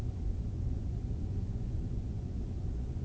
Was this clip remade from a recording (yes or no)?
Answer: yes